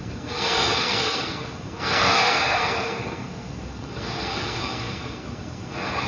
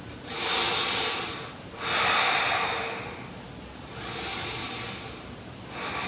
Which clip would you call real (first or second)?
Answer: second